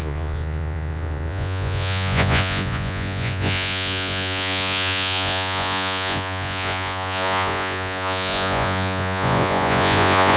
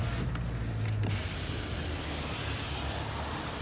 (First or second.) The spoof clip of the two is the first